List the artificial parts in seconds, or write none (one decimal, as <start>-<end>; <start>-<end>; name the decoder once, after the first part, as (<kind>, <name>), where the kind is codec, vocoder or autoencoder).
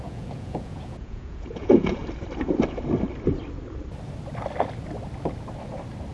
0.0-2.0 (vocoder, Vocos)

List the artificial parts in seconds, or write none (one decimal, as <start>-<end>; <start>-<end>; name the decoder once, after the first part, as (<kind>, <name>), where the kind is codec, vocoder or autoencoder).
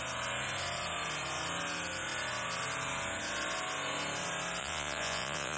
4.6-5.6 (vocoder, Vocos)